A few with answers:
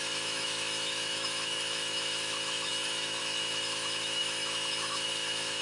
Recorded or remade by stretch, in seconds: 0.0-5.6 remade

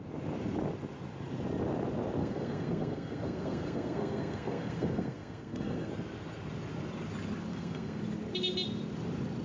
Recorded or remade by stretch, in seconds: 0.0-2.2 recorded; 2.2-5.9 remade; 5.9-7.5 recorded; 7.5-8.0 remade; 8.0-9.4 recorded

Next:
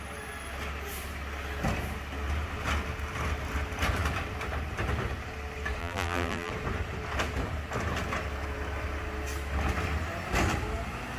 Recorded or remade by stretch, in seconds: 0.0-5.8 recorded; 5.8-6.5 remade; 6.5-11.2 recorded

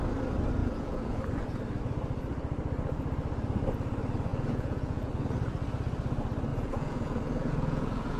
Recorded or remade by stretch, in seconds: 0.0-0.6 recorded; 0.6-1.2 remade; 1.2-4.3 recorded; 4.3-5.1 remade; 5.1-6.5 recorded; 6.5-8.2 remade